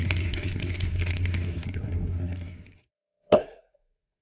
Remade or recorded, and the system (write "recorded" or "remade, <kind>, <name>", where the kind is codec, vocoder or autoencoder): remade, codec, SNAC